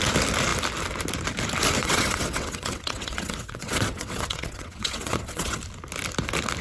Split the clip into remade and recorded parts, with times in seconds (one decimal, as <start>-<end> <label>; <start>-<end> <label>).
0.0-1.8 recorded; 1.8-5.6 remade; 5.6-6.6 recorded